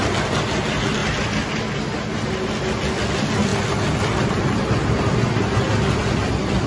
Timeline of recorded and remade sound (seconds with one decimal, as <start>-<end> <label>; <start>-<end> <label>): 0.0-6.7 recorded